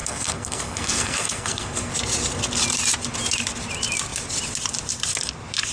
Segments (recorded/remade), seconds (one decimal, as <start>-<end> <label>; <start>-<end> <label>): 0.0-1.9 remade; 1.9-5.7 recorded

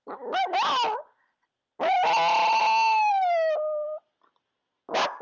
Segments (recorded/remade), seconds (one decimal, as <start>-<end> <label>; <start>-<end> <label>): 0.0-5.2 recorded